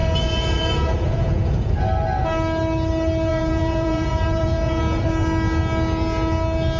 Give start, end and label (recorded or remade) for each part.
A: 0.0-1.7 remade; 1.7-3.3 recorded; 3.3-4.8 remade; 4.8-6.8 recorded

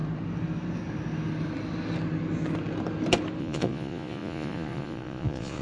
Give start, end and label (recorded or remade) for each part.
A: 0.0-3.4 recorded; 3.4-5.6 remade

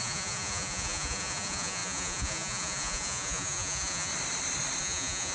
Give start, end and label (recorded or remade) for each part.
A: 0.0-4.1 remade; 4.1-4.8 recorded; 4.8-5.3 remade

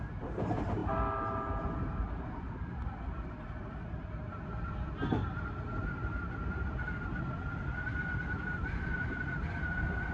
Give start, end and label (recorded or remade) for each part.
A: 0.0-10.1 recorded

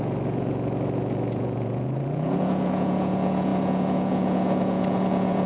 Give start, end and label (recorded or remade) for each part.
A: 0.0-5.5 remade